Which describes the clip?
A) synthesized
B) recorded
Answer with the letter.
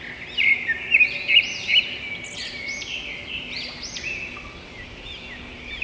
B